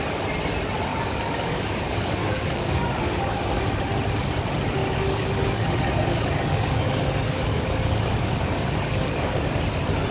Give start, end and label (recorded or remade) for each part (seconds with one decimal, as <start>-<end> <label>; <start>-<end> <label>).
0.0-0.9 recorded; 0.9-3.4 remade; 3.4-4.8 recorded; 4.8-9.5 remade; 9.5-10.1 recorded

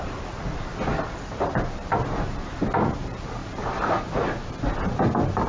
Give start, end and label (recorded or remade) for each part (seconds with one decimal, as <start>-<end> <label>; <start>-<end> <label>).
0.0-5.5 recorded

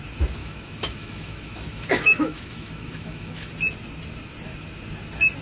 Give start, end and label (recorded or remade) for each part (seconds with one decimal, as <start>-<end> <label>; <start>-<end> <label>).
0.0-0.4 recorded; 0.4-3.5 remade; 3.5-5.4 recorded

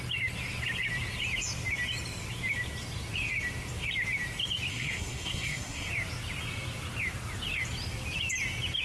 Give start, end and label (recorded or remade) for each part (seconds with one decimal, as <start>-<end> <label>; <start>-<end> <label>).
0.0-4.7 recorded; 4.7-5.9 remade; 5.9-8.8 recorded